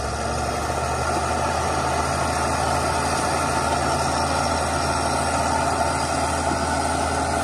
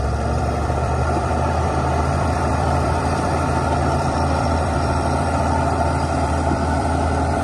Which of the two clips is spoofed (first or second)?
second